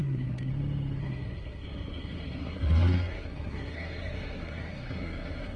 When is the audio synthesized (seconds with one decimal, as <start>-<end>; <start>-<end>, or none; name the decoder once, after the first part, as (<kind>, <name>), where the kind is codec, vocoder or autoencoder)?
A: 0.0-0.5 (codec, SNAC); 1.0-5.6